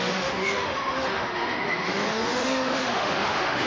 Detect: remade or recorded remade